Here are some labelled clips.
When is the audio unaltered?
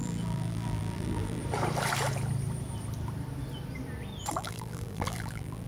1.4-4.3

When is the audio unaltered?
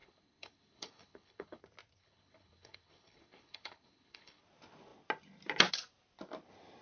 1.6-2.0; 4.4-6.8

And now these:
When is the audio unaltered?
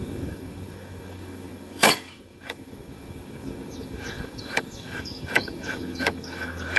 none